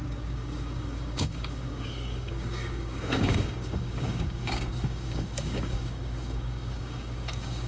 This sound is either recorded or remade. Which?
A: remade